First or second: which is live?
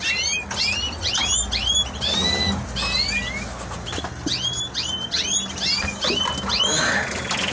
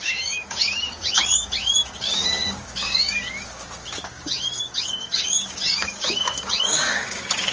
first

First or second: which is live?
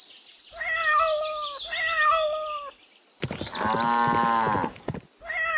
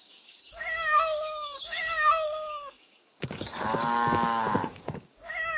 first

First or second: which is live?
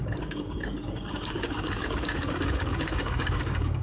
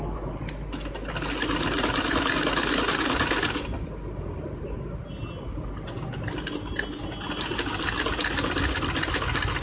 second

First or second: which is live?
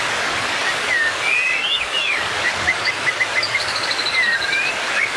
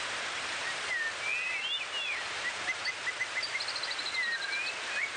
second